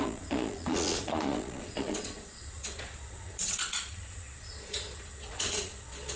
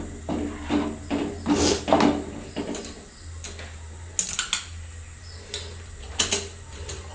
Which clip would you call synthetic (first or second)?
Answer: first